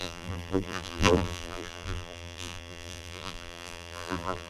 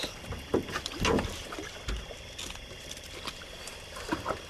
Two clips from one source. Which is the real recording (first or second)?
second